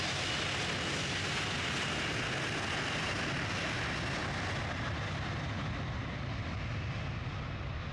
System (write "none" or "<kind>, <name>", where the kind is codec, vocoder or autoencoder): none